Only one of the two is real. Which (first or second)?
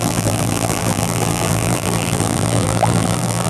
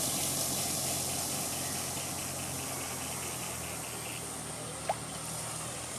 second